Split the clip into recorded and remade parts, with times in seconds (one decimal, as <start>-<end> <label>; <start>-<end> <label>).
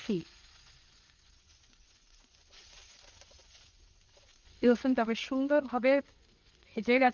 0.0-7.1 remade